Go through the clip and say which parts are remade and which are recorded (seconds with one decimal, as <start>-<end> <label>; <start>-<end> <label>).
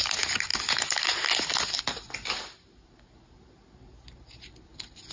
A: 0.0-5.1 recorded